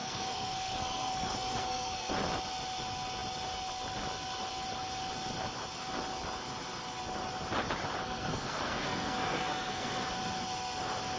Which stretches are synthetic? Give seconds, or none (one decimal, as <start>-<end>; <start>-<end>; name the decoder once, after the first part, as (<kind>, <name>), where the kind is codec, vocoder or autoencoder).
0.0-2.1 (codec, SNAC); 8.0-10.1